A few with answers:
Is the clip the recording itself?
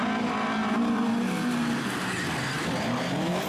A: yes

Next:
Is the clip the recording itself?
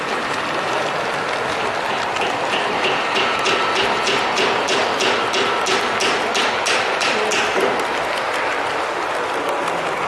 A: no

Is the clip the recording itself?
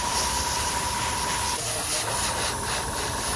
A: no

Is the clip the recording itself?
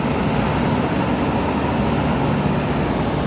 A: yes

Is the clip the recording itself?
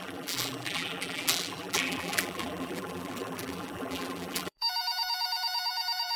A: no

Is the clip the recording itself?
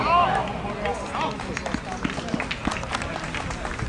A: yes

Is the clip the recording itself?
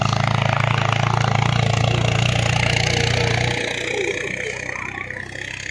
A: yes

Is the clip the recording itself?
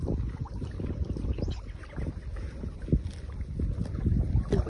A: yes